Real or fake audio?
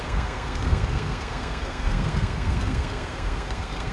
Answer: fake